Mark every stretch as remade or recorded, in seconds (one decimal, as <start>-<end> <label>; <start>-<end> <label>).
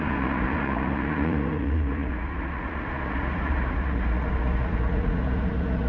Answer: 0.0-5.9 remade